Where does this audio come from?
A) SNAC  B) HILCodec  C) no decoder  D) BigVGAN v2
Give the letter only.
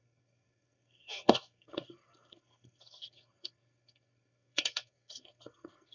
A